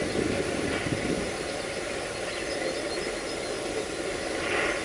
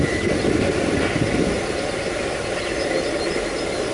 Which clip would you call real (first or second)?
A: first